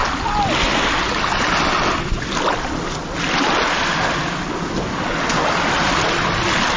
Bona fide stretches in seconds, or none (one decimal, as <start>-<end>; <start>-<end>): 0.0-6.8